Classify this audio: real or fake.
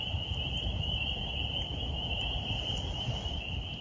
real